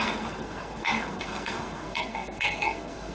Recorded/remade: remade